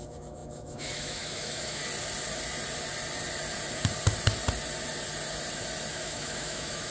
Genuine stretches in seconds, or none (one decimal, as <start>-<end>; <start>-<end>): 1.8-5.9

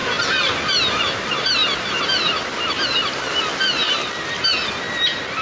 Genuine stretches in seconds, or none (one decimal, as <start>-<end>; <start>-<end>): 0.0-5.4

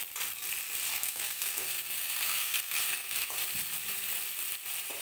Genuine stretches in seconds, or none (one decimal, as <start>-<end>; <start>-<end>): 0.0-0.9; 3.3-5.0

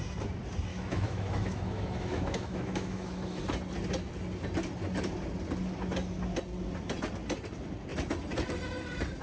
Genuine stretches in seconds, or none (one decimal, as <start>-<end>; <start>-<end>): 0.0-0.7; 3.4-9.2

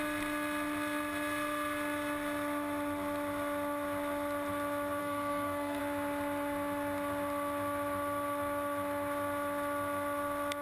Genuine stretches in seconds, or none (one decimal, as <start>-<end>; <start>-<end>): 0.0-5.0; 5.8-10.6